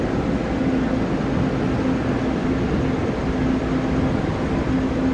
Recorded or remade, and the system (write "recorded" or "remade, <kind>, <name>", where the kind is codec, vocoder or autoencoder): recorded